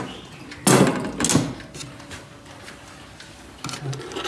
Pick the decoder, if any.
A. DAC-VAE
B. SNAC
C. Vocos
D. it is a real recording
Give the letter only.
D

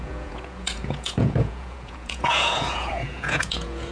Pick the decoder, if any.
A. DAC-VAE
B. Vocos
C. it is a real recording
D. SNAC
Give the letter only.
B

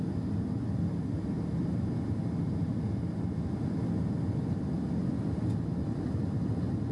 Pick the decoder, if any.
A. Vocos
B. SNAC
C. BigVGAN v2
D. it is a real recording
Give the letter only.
D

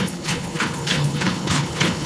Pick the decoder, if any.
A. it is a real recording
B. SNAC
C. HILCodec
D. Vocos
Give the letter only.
C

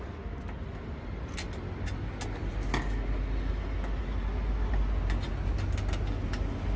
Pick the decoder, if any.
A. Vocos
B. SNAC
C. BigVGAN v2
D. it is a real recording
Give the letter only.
D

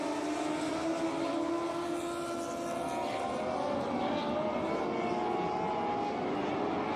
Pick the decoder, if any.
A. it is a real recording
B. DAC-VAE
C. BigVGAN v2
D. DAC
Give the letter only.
A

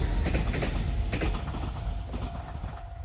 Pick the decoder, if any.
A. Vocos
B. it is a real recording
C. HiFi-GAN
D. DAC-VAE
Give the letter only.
B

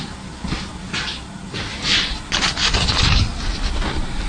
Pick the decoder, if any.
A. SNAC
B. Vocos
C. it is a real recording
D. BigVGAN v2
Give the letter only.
C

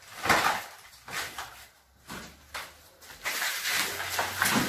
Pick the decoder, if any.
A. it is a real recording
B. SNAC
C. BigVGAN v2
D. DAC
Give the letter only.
A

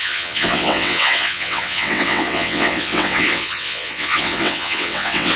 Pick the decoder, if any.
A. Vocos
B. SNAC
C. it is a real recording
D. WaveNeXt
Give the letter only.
D